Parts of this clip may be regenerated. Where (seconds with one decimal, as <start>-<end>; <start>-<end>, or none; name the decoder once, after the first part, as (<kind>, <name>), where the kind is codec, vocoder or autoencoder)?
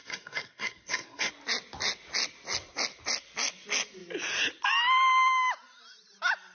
0.0-1.3 (codec, SNAC)